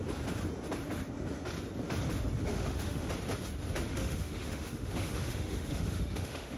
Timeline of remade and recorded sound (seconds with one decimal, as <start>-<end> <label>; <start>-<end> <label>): 0.0-2.4 recorded; 2.4-3.1 remade; 3.1-3.9 recorded; 3.9-6.6 remade

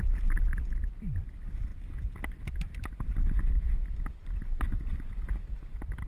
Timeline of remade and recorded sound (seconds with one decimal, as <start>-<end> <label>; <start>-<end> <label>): 0.0-1.7 recorded; 1.7-3.5 remade; 3.5-6.1 recorded

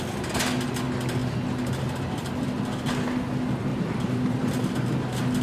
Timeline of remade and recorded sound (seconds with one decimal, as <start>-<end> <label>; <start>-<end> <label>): 0.0-3.7 recorded; 3.7-4.4 remade; 4.4-5.4 recorded